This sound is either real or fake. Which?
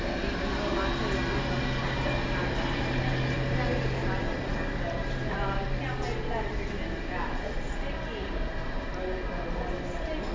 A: real